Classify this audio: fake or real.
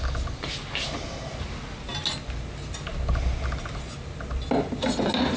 real